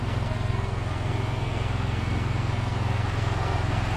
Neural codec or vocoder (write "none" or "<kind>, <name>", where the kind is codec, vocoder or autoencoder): codec, SNAC